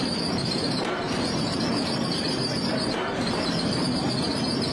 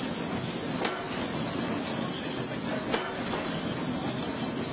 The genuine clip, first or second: second